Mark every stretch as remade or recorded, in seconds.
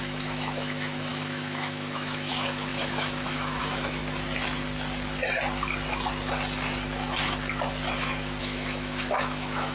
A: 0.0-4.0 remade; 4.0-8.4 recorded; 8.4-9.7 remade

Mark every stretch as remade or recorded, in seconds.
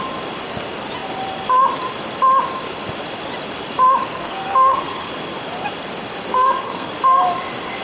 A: 0.0-4.2 recorded; 4.2-5.1 remade; 5.1-6.3 recorded; 6.3-6.9 remade; 6.9-7.8 recorded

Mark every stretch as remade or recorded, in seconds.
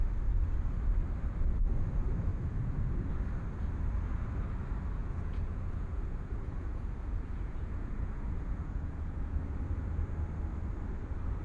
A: 0.0-2.3 recorded; 2.3-3.1 remade; 3.1-5.0 recorded; 5.0-9.4 remade; 9.4-11.4 recorded